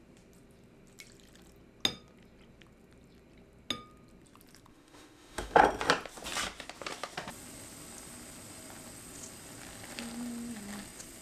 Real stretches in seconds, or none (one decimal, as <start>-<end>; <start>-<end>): 0.0-4.7; 5.6-11.2